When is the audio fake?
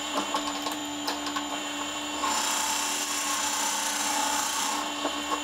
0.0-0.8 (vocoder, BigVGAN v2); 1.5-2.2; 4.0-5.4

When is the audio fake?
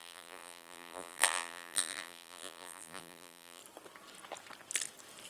0.0-3.6 (vocoder, BigVGAN v2)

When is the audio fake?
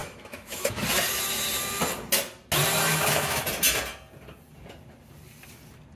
0.0-0.8 (autoencoder, DAC-VAE); 2.9-3.4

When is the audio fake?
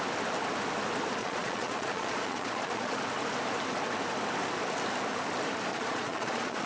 1.2-3.0 (vocoder, Vocos); 5.7-6.7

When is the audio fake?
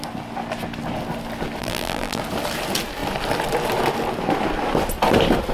1.6-2.2 (vocoder, BigVGAN v2)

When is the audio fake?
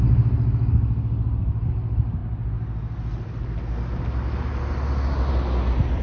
none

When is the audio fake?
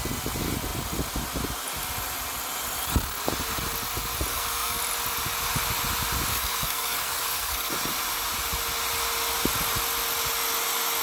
4.3-4.8 (codec, SNAC); 6.3-7.7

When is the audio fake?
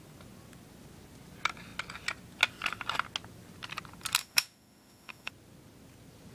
4.2-5.3 (autoencoder, DAC-VAE)